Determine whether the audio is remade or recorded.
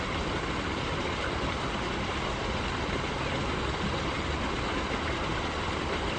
recorded